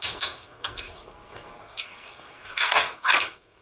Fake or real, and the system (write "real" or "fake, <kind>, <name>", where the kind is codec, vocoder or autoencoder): fake, codec, SNAC